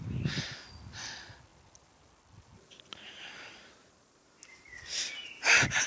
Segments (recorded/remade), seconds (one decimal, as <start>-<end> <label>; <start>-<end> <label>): 0.0-5.9 recorded